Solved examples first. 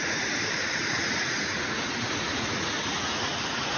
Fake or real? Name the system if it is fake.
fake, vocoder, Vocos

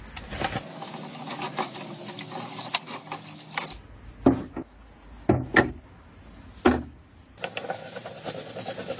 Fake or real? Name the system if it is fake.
real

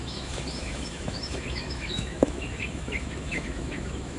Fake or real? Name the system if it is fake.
fake, autoencoder, DAC-VAE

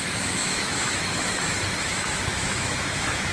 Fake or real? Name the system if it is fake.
fake, autoencoder, DAC-VAE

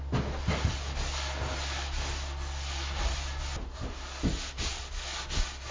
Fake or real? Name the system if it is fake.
real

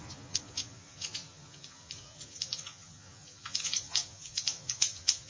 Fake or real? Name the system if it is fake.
fake, vocoder, Vocos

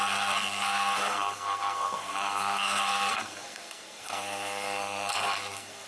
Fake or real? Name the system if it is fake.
fake, codec, SNAC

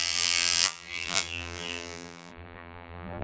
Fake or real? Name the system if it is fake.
fake, vocoder, BigVGAN v2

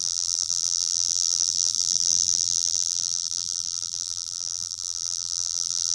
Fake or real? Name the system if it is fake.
fake, vocoder, BigVGAN v2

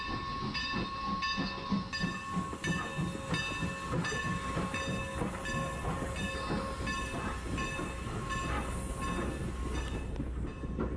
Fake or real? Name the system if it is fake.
real